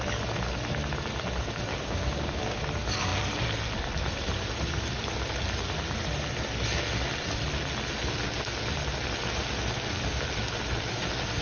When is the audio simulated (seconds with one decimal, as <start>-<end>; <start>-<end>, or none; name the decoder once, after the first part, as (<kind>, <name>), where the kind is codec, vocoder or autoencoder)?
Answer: 1.7-2.6 (codec, DAC)